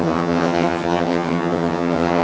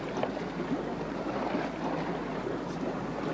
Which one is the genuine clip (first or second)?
second